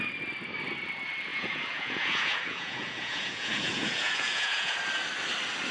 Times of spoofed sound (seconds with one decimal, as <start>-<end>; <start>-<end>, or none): 1.3-4.7